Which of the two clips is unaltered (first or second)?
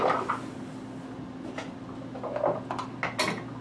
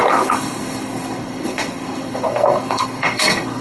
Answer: first